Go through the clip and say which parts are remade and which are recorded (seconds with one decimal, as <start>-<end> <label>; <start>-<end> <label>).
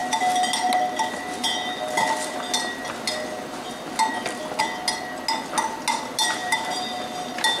0.0-7.6 recorded